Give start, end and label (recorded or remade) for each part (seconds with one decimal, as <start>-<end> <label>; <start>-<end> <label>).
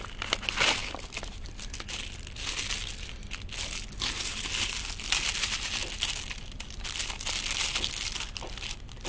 0.0-9.1 recorded